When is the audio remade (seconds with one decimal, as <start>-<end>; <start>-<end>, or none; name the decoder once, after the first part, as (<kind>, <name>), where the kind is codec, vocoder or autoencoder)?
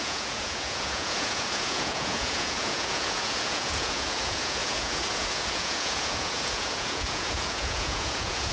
0.0-8.5 (vocoder, Vocos)